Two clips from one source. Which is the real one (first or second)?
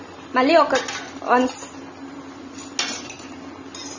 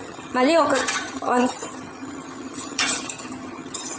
first